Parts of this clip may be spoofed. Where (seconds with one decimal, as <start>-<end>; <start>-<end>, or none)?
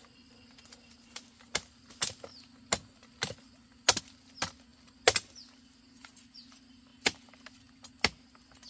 none